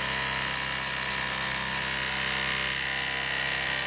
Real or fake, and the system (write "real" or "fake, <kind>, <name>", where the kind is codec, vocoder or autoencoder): real